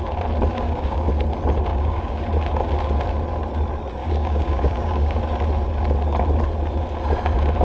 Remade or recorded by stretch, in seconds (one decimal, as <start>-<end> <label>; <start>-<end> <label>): 0.0-0.5 recorded; 0.5-1.1 remade; 1.1-1.7 recorded; 1.7-2.2 remade; 2.2-4.0 recorded; 4.0-5.2 remade; 5.2-7.6 recorded